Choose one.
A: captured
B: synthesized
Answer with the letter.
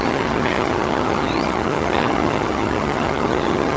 B